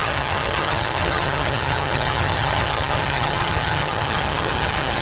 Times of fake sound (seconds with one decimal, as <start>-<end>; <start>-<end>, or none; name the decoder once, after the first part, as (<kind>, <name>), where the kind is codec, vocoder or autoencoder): 0.0-5.0 (vocoder, HiFi-GAN)